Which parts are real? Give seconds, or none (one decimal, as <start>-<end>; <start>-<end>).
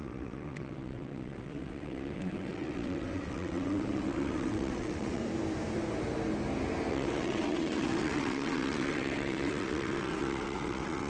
5.2-6.9